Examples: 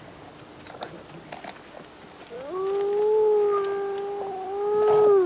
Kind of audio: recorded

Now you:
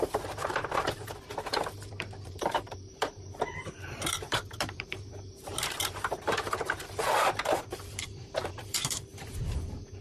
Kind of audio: remade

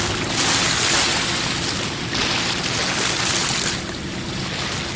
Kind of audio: recorded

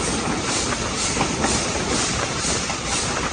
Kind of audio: recorded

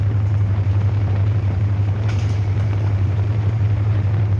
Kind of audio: remade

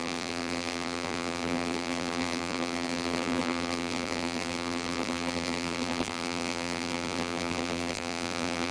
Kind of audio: remade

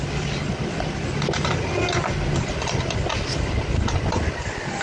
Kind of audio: recorded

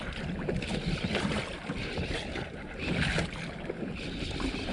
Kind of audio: recorded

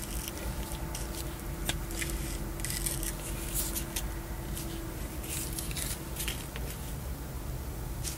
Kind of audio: recorded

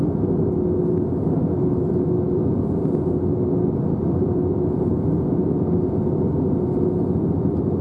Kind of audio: recorded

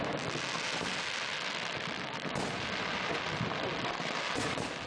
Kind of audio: recorded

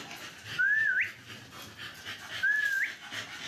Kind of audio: recorded